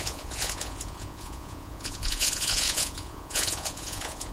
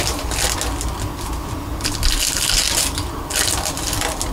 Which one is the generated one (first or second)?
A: first